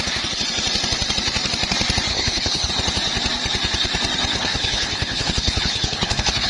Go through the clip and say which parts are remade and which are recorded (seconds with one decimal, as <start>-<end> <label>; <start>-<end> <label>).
0.0-2.1 recorded; 2.1-2.7 remade; 2.7-4.3 recorded; 4.3-6.5 remade

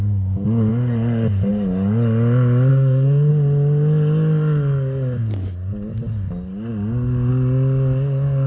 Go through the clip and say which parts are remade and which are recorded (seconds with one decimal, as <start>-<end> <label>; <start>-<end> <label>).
0.0-2.7 recorded; 2.7-3.3 remade; 3.3-8.5 recorded